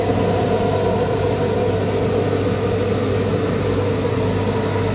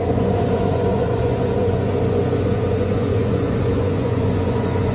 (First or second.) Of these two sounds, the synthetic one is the second